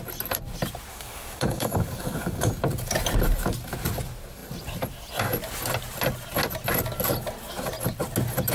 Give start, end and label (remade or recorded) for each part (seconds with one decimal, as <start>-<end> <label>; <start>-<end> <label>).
0.0-0.9 recorded; 0.9-2.5 remade; 2.5-8.5 recorded